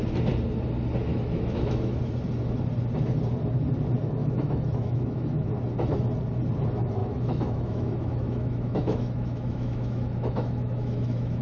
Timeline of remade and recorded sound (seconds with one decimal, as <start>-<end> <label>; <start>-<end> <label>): 0.0-1.1 recorded; 1.1-2.0 remade; 2.0-4.2 recorded; 4.2-5.5 remade; 5.5-7.0 recorded; 7.0-11.4 remade

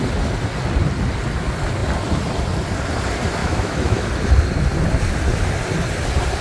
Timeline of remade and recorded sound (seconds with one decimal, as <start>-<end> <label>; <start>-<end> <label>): 0.0-3.4 recorded; 3.4-4.1 remade; 4.1-6.4 recorded